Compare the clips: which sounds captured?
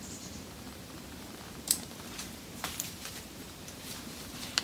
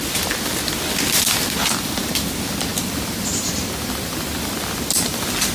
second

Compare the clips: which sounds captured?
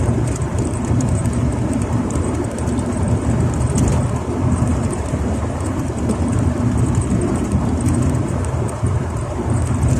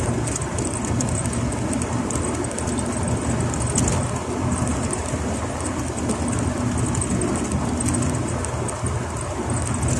second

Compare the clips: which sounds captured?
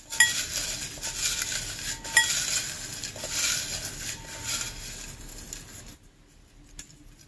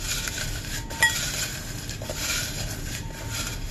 first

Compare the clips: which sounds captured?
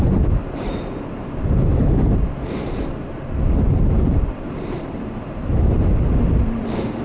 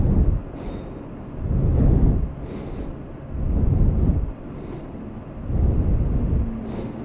second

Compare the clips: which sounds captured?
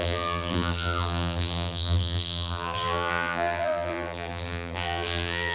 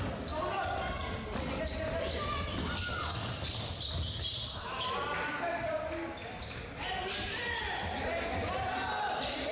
second